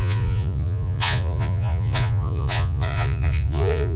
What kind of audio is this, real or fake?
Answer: fake